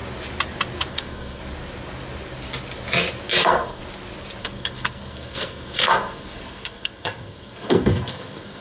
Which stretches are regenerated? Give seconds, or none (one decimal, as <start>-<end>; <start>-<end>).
0.9-1.4; 3.3-3.8; 4.4-8.6